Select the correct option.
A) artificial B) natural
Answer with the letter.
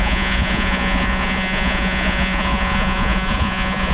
A